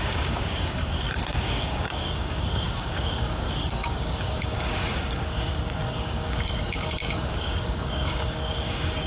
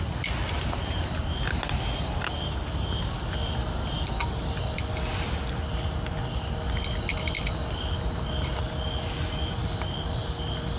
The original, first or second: second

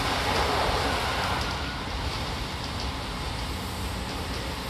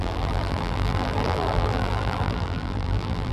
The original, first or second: first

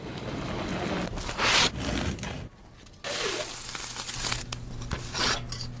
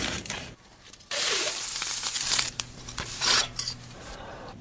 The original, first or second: first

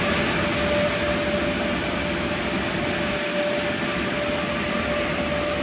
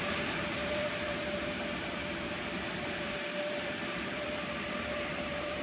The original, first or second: first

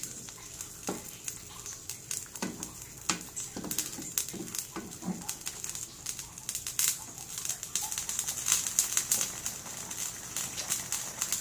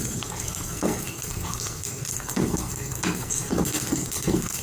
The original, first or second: first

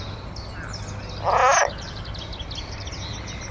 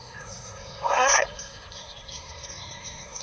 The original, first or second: first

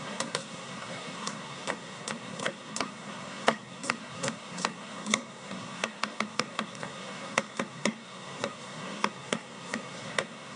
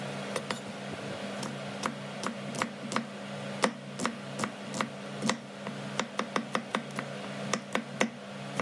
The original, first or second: second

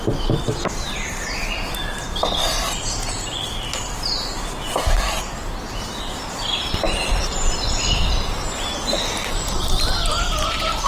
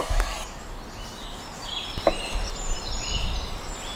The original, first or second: second